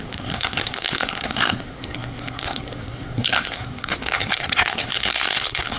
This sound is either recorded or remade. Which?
remade